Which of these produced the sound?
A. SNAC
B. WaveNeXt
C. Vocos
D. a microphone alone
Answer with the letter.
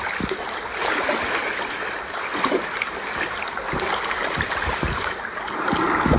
D